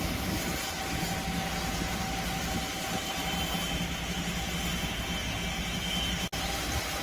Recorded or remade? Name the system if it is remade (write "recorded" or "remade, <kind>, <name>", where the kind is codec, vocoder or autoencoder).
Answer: recorded